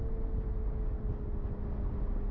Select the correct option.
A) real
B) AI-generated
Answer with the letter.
A